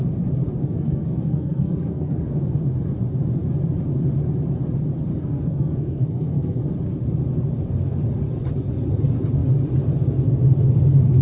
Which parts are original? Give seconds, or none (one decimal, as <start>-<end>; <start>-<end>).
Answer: 0.0-0.6; 2.4-5.1; 6.6-11.2